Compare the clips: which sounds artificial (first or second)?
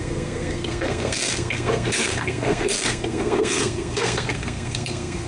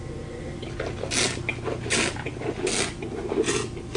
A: first